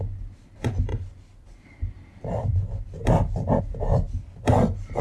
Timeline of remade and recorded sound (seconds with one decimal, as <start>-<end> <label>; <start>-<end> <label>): 0.0-5.0 recorded